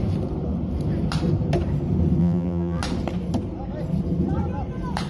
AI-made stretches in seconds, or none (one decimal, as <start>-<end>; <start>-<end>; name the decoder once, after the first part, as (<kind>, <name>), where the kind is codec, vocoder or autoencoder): 2.2-2.8 (vocoder, BigVGAN v2)